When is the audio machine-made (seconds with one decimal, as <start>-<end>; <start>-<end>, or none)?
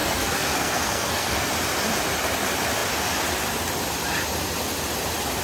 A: 0.0-1.5